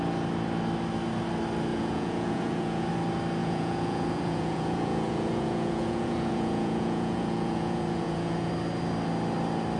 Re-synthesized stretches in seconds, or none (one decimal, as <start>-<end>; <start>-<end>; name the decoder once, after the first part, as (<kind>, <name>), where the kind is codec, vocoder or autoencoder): 1.7-2.9 (vocoder, Vocos); 3.4-8.5